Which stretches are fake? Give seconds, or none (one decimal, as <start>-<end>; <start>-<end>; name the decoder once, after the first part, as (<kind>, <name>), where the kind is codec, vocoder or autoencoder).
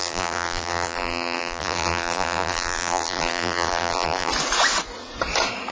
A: 0.0-4.3 (vocoder, BigVGAN v2)